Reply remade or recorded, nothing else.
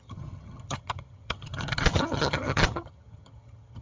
remade